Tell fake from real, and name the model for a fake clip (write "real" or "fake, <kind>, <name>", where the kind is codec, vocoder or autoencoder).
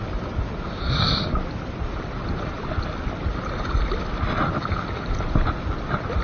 real